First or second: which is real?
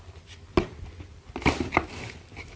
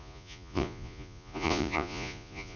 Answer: first